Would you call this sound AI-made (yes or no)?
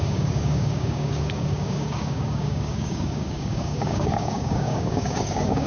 yes